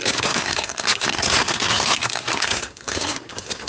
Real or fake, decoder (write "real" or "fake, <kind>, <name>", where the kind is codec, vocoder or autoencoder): fake, codec, SNAC